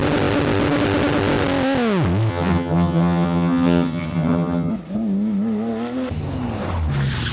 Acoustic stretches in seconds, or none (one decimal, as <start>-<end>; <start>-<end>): 0.0-2.3; 4.7-7.3